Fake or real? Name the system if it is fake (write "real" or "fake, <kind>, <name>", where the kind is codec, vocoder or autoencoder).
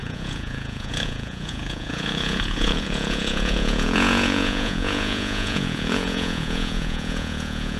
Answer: fake, vocoder, Vocos